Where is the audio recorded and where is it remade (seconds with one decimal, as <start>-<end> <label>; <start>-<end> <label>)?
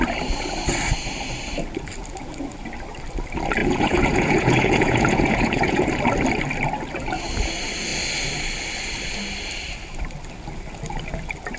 0.0-3.6 recorded; 3.6-6.0 remade; 6.0-11.6 recorded